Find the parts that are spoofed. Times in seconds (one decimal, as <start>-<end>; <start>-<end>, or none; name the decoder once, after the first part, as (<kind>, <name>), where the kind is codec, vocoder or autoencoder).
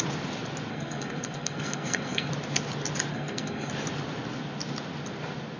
0.7-2.3 (codec, SNAC); 3.1-3.7